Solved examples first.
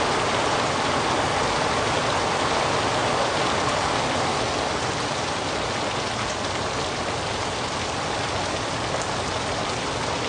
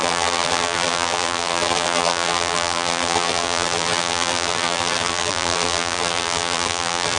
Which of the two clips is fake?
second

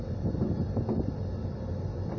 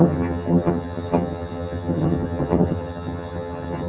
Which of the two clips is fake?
second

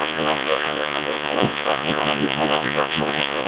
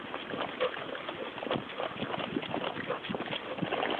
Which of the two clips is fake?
first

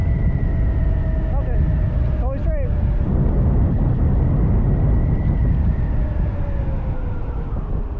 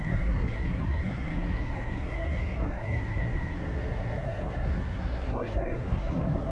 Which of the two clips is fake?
second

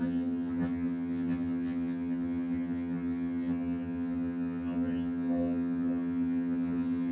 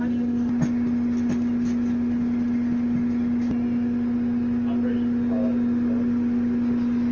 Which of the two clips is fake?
first